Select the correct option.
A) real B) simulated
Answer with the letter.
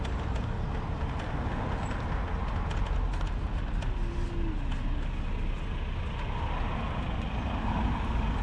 A